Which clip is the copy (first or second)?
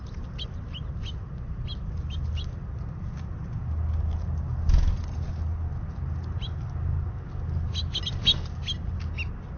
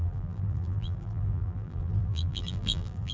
second